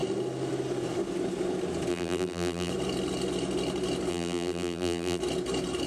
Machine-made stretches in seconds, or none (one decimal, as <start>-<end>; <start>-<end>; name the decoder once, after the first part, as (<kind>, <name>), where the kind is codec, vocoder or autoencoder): 1.9-2.7 (vocoder, BigVGAN v2); 4.1-5.2